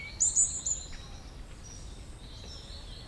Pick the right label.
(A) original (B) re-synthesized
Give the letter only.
A